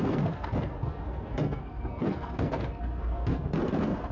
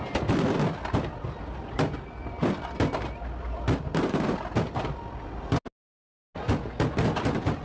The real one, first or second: second